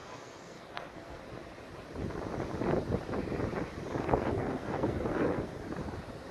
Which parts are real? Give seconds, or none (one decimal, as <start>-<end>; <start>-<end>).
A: 1.2-4.0; 5.5-6.3